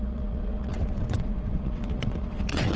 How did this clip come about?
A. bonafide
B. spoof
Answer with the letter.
B